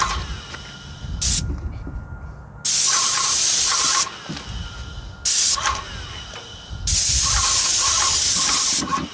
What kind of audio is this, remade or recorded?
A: recorded